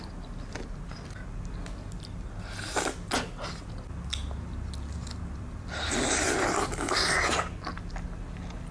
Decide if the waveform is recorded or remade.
recorded